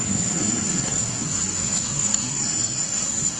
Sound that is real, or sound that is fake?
fake